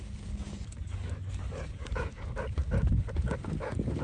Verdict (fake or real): fake